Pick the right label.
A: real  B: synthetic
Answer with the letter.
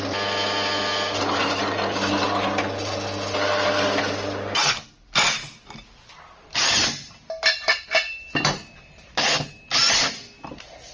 A